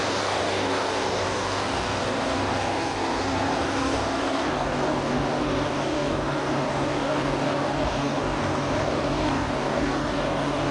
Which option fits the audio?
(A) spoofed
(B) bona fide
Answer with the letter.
A